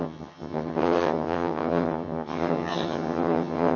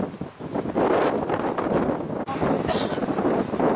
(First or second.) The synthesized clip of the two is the first